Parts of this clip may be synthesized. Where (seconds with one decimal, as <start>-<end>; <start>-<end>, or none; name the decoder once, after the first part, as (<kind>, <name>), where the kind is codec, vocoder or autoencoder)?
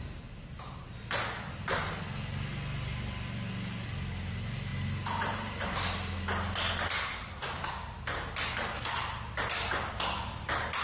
none